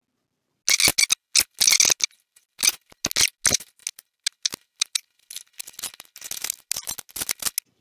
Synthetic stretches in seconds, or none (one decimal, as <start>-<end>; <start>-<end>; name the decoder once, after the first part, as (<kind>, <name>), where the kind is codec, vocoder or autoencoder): none